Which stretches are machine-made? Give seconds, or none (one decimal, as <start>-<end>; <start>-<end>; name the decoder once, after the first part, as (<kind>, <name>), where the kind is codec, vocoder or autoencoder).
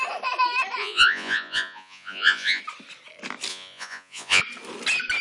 0.8-2.6 (vocoder, Vocos); 3.5-4.4